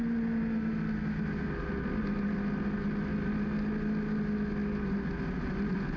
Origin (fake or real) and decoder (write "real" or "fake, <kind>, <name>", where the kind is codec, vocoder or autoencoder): real